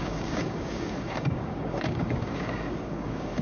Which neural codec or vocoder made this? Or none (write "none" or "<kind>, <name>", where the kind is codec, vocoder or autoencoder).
codec, DAC